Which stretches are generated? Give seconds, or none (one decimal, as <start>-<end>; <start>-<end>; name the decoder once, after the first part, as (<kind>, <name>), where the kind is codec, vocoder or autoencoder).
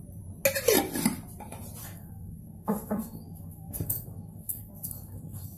1.8-5.6 (codec, SNAC)